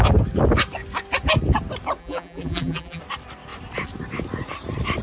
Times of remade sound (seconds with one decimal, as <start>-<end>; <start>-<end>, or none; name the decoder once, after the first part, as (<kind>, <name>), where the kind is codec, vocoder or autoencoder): 2.0-3.0 (vocoder, BigVGAN v2)